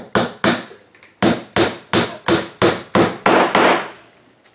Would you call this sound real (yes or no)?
yes